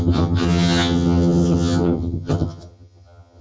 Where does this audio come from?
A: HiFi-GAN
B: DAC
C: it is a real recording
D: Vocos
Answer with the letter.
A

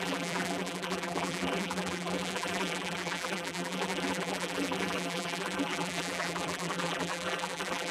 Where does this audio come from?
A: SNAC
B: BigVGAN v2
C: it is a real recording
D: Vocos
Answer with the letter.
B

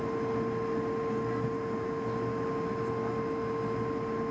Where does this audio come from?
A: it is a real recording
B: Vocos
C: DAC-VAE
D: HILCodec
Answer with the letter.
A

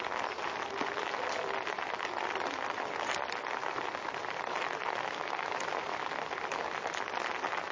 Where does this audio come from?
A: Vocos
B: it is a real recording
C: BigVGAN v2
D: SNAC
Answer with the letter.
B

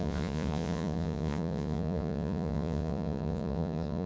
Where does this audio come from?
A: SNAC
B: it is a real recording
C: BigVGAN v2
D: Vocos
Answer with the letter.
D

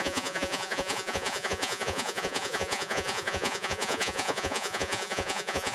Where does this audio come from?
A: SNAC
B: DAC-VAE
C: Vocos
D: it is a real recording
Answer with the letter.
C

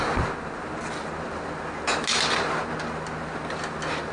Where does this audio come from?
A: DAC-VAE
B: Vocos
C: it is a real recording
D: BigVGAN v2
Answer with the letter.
C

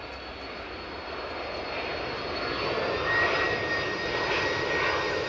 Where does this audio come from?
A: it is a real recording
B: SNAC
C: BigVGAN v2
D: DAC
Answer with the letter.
A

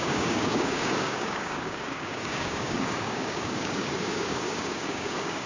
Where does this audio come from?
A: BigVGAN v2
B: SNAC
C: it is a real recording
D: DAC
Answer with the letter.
D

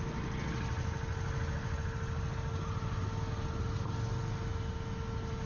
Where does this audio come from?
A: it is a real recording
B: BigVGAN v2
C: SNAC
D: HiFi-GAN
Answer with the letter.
A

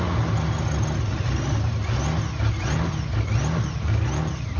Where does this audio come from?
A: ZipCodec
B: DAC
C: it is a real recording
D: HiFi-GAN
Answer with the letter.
C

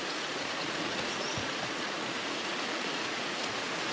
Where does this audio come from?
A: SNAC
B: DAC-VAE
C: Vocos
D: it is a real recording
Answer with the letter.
C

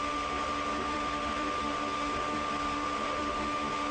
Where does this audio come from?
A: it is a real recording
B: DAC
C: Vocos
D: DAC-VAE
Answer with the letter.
D